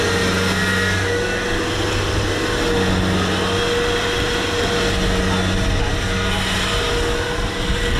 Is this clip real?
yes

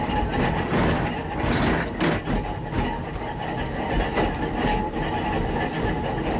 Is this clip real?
yes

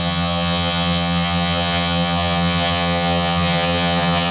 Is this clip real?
no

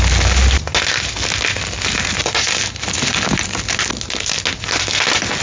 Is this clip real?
yes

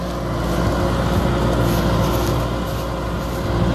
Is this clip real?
yes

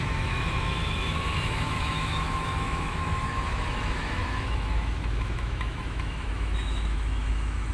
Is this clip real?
no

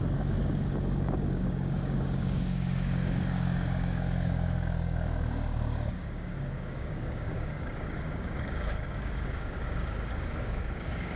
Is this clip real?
no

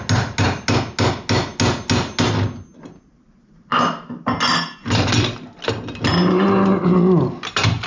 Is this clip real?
yes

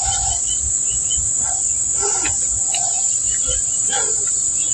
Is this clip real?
yes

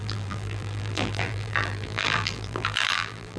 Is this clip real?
no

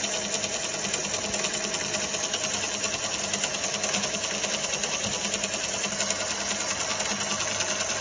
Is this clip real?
yes